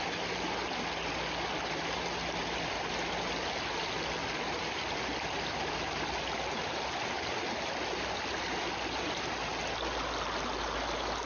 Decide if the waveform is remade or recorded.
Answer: recorded